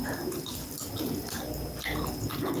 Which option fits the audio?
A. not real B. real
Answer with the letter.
B